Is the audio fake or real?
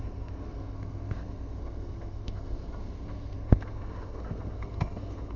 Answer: fake